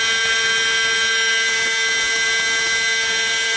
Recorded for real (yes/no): yes